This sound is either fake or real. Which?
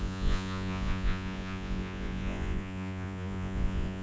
fake